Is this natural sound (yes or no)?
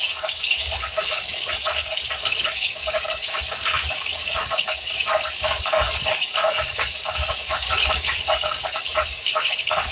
no